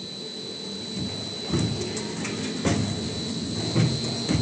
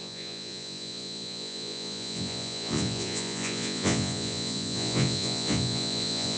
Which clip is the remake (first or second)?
second